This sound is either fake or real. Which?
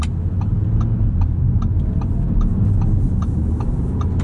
real